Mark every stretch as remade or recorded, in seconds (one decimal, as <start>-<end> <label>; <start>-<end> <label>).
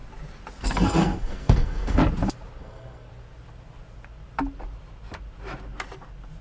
0.0-0.6 recorded; 0.6-2.0 remade; 2.0-2.6 recorded; 2.6-3.1 remade; 3.1-6.4 recorded